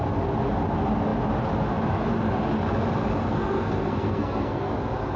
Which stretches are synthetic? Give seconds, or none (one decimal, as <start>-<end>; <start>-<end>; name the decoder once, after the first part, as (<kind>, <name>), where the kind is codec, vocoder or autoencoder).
3.3-4.7 (codec, SNAC)